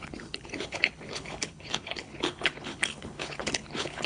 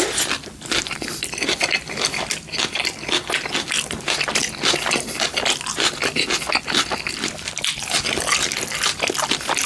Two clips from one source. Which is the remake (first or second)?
first